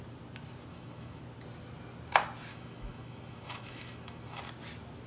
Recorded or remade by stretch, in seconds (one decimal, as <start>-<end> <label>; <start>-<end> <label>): 0.0-0.7 recorded; 0.7-1.2 remade; 1.2-2.5 recorded; 2.5-4.4 remade; 4.4-5.1 recorded